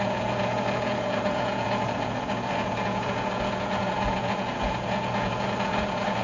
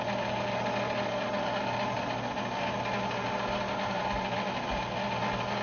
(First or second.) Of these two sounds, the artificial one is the first